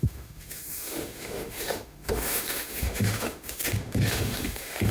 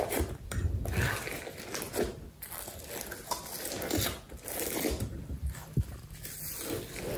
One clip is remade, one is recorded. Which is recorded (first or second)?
second